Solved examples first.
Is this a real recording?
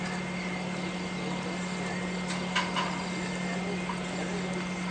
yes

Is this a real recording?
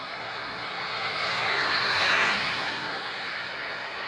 no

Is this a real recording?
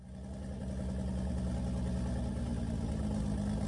yes